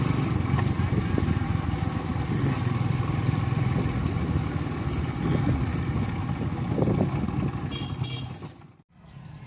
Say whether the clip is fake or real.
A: real